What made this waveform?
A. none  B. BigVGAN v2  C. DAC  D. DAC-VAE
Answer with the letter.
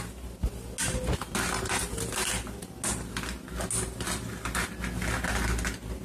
A